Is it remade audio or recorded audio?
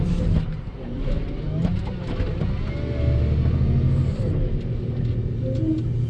recorded